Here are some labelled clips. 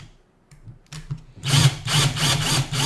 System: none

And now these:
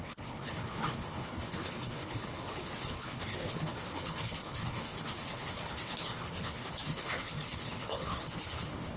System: codec, HILCodec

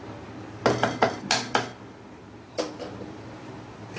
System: none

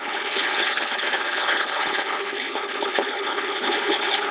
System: codec, HILCodec